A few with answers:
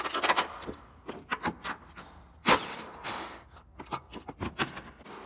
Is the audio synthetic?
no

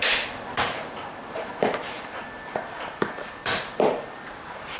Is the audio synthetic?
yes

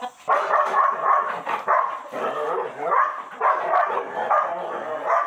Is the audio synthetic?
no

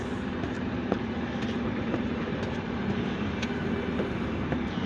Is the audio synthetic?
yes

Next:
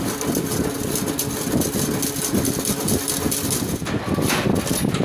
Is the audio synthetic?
no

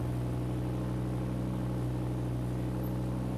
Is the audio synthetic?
yes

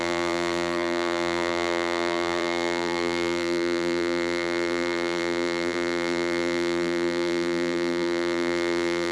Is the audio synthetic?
yes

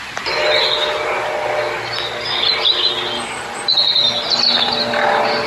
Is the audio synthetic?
no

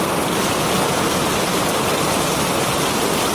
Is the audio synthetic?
yes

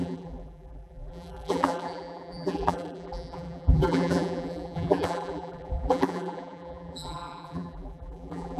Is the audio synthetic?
yes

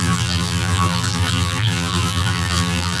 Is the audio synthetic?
yes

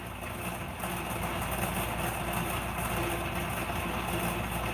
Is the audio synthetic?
no